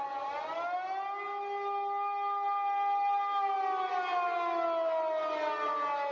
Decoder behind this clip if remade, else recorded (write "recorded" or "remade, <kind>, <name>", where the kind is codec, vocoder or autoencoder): recorded